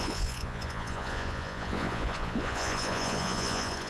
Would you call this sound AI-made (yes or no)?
yes